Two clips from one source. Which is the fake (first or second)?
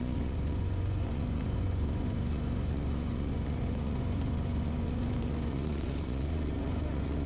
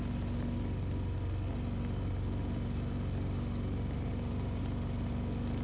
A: first